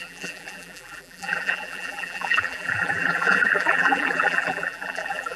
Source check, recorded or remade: remade